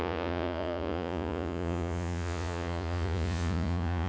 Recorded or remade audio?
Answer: remade